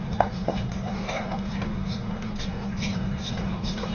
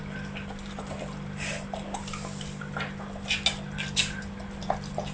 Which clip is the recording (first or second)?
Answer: second